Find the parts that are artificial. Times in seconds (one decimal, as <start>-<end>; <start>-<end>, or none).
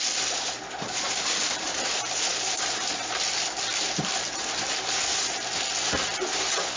0.0-6.8